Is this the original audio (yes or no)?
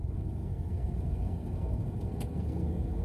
no